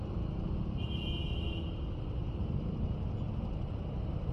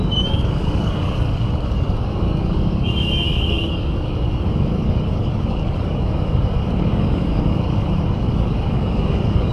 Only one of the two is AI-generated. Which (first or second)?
second